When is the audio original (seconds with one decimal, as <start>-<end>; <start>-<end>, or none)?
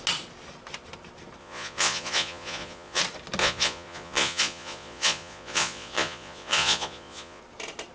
0.0-1.4; 3.0-3.4; 7.4-7.9